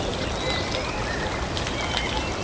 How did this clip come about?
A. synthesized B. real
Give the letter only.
B